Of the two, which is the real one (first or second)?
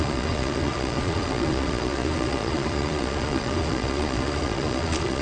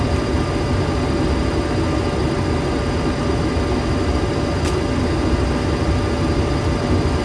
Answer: second